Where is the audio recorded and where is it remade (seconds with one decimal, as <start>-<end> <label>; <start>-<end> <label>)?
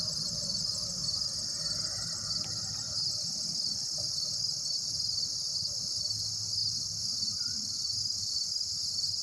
0.0-9.2 recorded